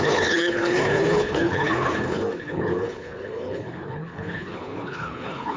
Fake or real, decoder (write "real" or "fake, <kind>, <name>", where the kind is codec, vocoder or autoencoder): fake, codec, HILCodec